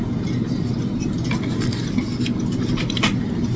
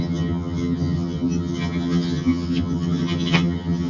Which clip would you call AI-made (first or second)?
second